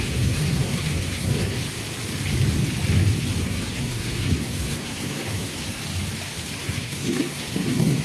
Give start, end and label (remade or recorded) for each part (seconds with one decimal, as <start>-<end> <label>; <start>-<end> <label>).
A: 0.0-1.6 remade; 1.6-3.4 recorded; 3.4-5.8 remade; 5.8-6.6 recorded; 6.6-8.0 remade